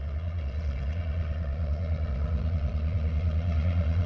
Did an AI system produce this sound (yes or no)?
yes